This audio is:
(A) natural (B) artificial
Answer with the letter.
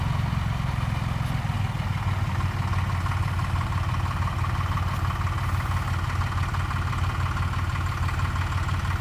A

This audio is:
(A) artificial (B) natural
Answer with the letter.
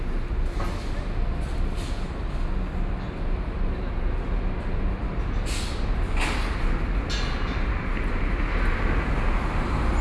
B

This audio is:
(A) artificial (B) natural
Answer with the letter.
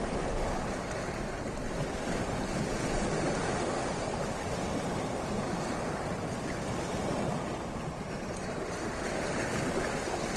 B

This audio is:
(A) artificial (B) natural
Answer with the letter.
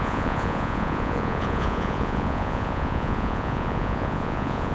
A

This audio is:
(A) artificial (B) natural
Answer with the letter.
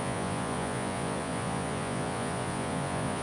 A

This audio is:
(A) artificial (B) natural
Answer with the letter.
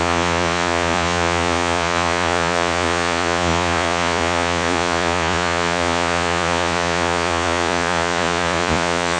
A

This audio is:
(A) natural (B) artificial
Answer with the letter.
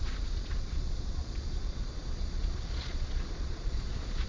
B